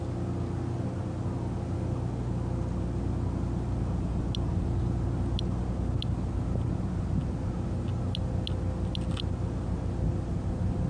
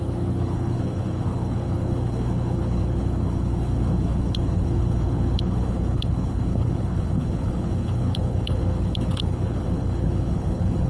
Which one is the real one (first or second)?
first